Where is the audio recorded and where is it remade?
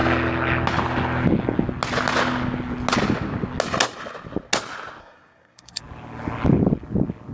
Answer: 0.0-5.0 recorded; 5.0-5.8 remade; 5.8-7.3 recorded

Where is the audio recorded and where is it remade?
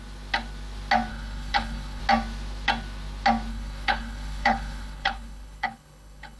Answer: 0.0-1.1 recorded; 1.1-2.0 remade; 2.0-3.5 recorded; 3.5-6.4 remade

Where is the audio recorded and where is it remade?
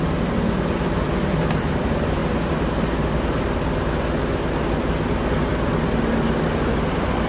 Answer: 0.0-7.3 recorded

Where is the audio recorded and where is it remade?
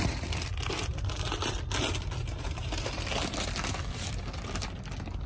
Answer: 0.0-2.2 recorded; 2.2-3.1 remade; 3.1-5.3 recorded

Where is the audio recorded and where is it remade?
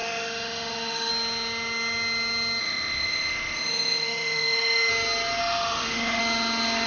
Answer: 0.0-1.1 remade; 1.1-2.6 recorded; 2.6-4.9 remade; 4.9-5.4 recorded; 5.4-6.2 remade; 6.2-6.9 recorded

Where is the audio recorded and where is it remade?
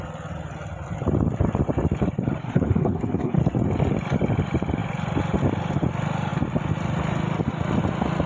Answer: 0.0-2.4 recorded; 2.4-3.4 remade; 3.4-8.3 recorded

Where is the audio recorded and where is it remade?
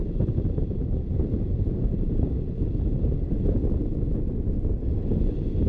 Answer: 0.0-3.4 remade; 3.4-5.7 recorded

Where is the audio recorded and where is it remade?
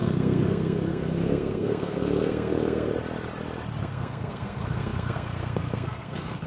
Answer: 0.0-2.9 remade; 2.9-3.8 recorded; 3.8-6.5 remade